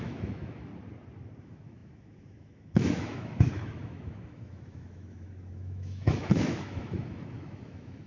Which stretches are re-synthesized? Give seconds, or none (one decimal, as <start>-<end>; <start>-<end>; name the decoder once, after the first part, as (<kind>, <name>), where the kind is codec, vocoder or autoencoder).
0.0-0.7 (autoencoder, DAC-VAE); 1.4-8.1